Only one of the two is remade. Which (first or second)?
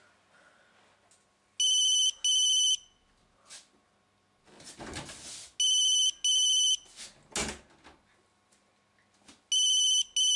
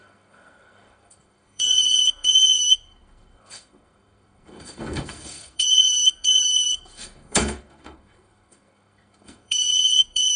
second